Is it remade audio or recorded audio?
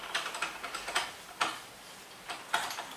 recorded